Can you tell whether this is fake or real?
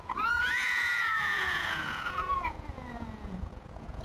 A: fake